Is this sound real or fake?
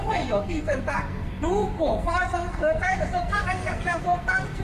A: fake